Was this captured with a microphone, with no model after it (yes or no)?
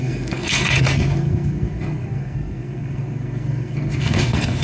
no